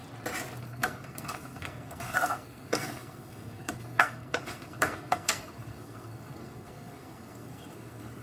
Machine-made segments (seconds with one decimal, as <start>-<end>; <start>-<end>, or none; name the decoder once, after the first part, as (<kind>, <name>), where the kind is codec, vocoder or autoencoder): 0.6-8.2 (codec, SNAC)